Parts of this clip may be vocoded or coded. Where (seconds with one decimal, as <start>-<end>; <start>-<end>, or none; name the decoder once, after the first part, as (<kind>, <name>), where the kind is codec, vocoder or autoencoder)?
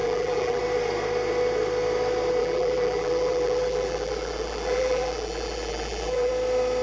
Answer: 0.0-0.6 (vocoder, BigVGAN v2); 2.4-6.3